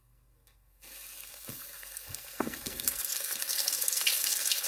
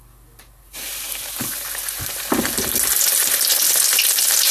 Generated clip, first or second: first